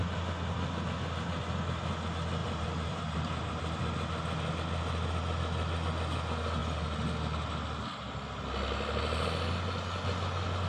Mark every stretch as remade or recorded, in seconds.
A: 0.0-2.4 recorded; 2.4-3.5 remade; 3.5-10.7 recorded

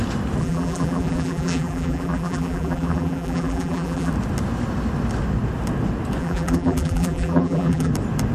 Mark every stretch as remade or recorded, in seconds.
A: 0.0-0.4 recorded; 0.4-4.1 remade; 4.1-6.2 recorded; 6.2-7.9 remade; 7.9-8.3 recorded

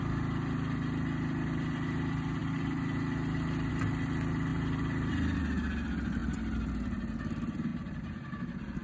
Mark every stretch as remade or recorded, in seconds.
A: 0.0-4.5 recorded; 4.5-5.4 remade; 5.4-7.7 recorded; 7.7-8.4 remade; 8.4-8.8 recorded

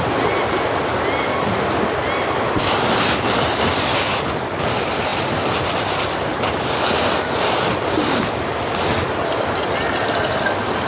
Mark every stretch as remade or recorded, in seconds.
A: 0.0-5.1 recorded; 5.1-6.2 remade; 6.2-10.9 recorded

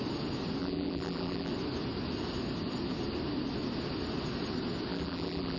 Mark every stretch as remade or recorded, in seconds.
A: 0.0-0.6 recorded; 0.6-1.5 remade; 1.5-4.9 recorded; 4.9-5.6 remade

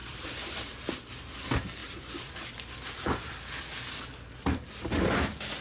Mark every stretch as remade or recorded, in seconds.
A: 0.0-0.8 remade; 0.8-1.8 recorded; 1.8-3.5 remade; 3.5-5.6 recorded

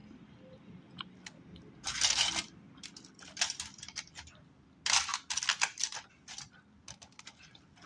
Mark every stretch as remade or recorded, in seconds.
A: 0.0-7.9 recorded